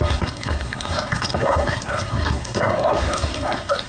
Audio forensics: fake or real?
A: fake